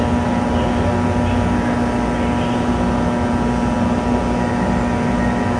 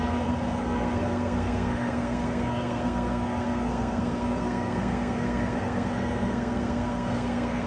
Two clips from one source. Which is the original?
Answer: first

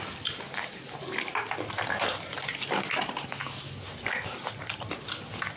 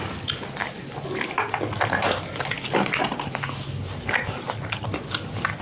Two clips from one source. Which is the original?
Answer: second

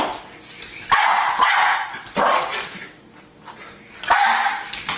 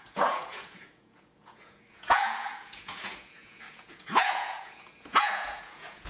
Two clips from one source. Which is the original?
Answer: first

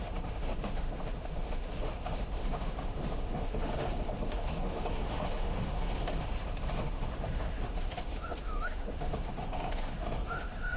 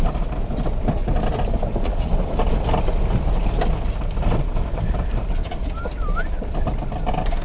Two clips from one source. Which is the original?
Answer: second